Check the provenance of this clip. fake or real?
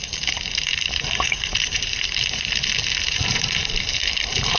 fake